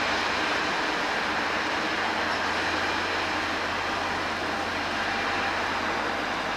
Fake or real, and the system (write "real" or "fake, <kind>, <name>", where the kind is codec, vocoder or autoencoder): real